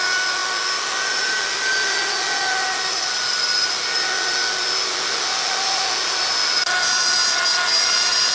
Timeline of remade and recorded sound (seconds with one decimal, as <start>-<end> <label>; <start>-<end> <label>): 0.0-8.3 recorded

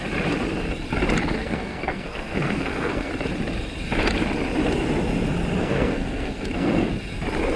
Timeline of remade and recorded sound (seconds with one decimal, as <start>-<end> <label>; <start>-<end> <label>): 0.0-1.4 recorded; 1.4-3.1 remade; 3.1-5.6 recorded; 5.6-6.9 remade; 6.9-7.6 recorded

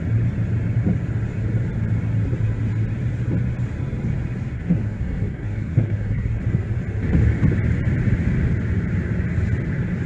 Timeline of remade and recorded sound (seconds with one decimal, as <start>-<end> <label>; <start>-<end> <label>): 0.0-4.5 recorded; 4.5-6.4 remade; 6.4-10.1 recorded

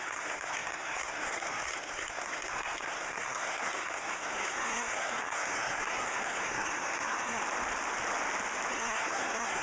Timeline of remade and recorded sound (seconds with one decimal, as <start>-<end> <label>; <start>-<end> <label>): 0.0-7.4 remade; 7.4-8.7 recorded; 8.7-9.6 remade

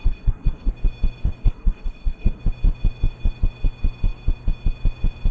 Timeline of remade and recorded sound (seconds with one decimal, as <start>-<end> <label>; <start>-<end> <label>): 0.0-0.7 remade; 0.7-1.4 recorded; 1.4-2.4 remade; 2.4-5.3 recorded

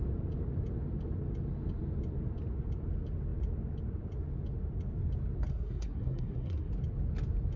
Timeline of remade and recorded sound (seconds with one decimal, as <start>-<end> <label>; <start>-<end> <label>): 0.0-5.5 recorded; 5.5-6.7 remade; 6.7-7.6 recorded